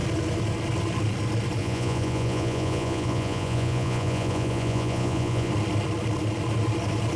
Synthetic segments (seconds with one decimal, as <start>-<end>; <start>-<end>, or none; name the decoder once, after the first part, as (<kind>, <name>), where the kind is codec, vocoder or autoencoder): 1.6-5.5 (vocoder, Vocos)